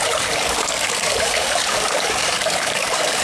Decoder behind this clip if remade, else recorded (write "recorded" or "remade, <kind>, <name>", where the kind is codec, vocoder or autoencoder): remade, codec, DAC